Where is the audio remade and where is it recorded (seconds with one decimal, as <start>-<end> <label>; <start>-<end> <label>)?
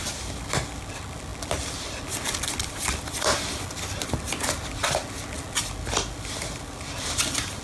0.0-7.6 recorded